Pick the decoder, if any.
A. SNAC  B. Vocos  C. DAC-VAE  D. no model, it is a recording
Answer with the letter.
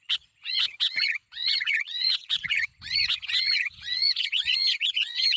B